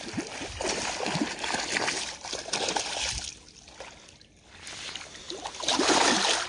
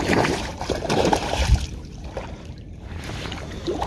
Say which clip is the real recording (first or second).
first